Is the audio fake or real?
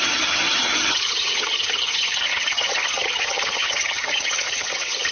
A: fake